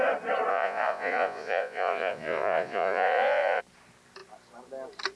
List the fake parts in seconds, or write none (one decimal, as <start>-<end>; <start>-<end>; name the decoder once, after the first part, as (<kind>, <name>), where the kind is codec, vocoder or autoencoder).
0.5-3.6 (vocoder, Vocos)